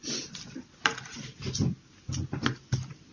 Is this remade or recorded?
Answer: recorded